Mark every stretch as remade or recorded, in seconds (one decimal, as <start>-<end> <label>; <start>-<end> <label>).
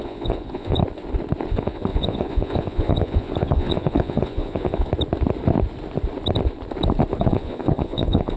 0.0-0.8 remade; 0.8-1.5 recorded; 1.5-4.9 remade; 4.9-7.2 recorded; 7.2-8.4 remade